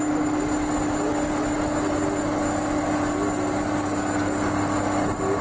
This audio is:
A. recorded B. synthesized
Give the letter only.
A